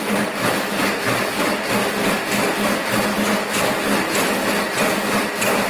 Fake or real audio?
real